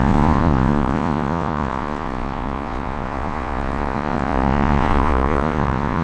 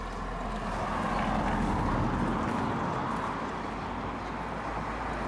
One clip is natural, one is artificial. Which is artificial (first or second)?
first